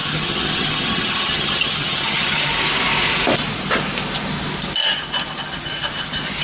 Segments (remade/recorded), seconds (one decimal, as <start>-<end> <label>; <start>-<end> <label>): 0.0-2.5 remade; 2.5-6.4 recorded